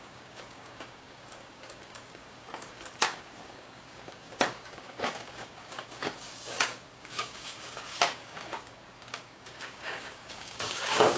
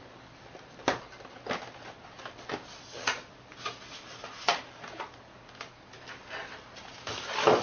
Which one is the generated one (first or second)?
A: first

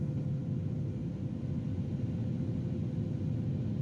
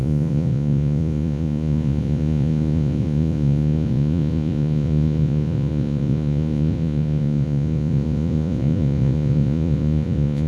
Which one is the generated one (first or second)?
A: second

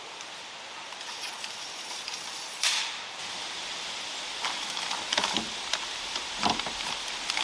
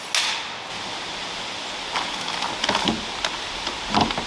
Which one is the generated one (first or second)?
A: first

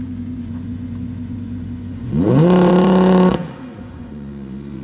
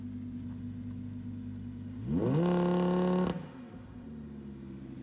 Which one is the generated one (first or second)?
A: first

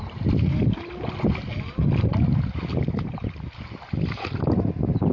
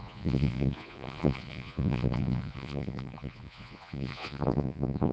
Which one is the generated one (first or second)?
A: second